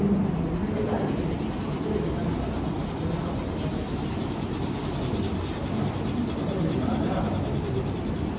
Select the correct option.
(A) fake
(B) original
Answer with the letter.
B